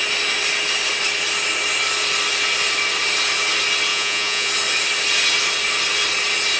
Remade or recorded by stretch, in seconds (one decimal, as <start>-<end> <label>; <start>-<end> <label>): 0.0-3.9 recorded; 3.9-4.5 remade; 4.5-6.6 recorded